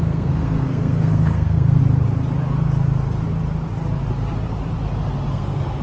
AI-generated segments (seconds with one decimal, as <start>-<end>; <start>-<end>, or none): 0.0-1.8; 5.3-5.8